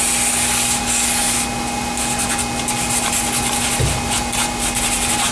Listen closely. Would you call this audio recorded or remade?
recorded